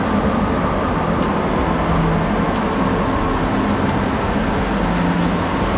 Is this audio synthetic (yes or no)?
no